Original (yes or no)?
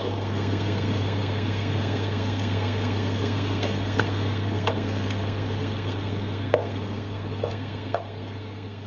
no